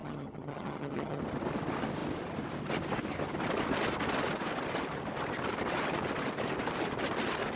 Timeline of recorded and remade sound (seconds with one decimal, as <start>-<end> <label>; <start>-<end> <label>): 0.0-1.2 remade; 1.2-7.6 recorded